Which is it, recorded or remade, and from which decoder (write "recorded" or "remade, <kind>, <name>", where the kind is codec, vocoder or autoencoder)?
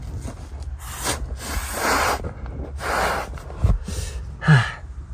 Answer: recorded